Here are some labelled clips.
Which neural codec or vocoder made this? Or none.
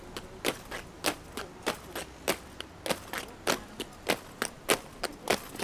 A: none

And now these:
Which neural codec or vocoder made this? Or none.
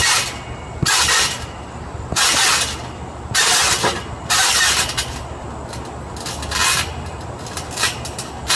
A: none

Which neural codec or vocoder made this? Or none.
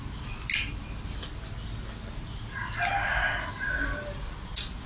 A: none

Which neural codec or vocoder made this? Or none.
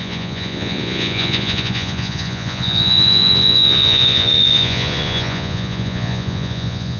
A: vocoder, Vocos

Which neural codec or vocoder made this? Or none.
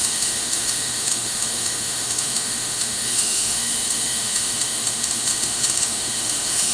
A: autoencoder, DAC-VAE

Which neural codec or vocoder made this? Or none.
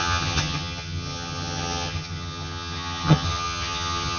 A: vocoder, HiFi-GAN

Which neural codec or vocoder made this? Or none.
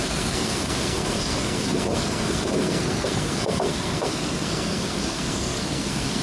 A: codec, SNAC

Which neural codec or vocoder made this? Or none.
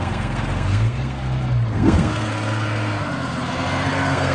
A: codec, SNAC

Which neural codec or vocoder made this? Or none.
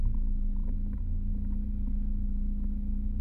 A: none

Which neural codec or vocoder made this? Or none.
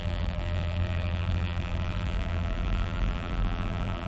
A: vocoder, BigVGAN v2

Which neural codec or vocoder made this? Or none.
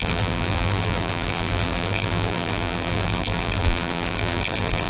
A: vocoder, BigVGAN v2